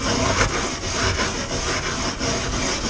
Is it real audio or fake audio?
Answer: real